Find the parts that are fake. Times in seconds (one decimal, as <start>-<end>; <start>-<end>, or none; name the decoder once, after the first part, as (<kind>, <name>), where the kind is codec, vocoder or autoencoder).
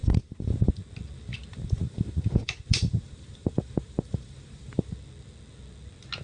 0.0-0.7 (vocoder, BigVGAN v2); 1.5-4.9